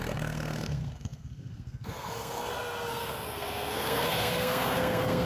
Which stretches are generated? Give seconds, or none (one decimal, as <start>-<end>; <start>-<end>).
0.0-5.3